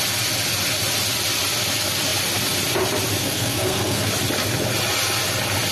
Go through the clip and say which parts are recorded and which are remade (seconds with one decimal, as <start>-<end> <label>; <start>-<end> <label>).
0.0-3.2 recorded; 3.2-4.1 remade; 4.1-5.7 recorded